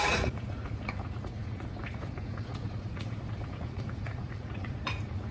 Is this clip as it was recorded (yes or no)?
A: no